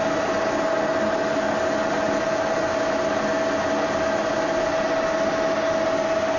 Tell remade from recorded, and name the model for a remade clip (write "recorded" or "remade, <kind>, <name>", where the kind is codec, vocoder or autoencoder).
recorded